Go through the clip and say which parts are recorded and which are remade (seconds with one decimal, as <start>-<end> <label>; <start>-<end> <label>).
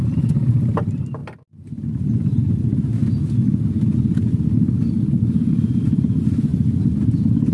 0.0-1.2 remade; 1.2-2.0 recorded; 2.0-3.0 remade; 3.0-5.1 recorded; 5.1-6.5 remade; 6.5-7.5 recorded